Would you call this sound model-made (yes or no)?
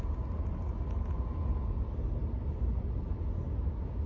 no